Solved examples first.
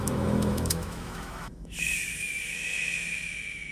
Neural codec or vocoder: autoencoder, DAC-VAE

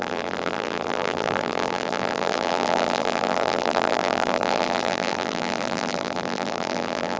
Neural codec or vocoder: vocoder, BigVGAN v2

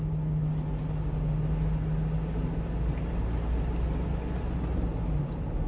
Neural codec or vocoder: none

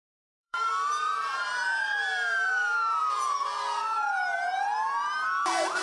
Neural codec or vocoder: vocoder, BigVGAN v2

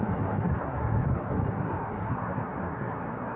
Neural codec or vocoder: codec, SNAC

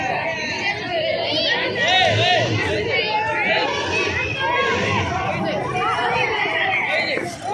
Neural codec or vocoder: none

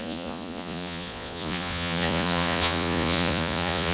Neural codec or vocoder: vocoder, Vocos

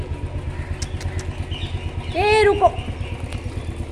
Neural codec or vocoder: none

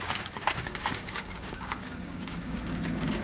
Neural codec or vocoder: codec, DAC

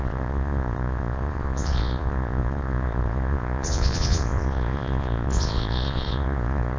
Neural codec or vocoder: vocoder, Vocos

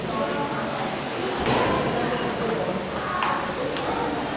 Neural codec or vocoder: none